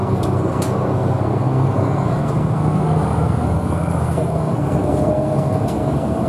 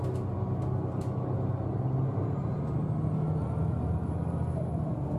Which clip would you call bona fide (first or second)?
second